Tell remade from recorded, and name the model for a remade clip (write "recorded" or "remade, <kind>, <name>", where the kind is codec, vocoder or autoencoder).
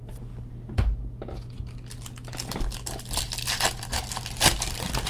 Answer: recorded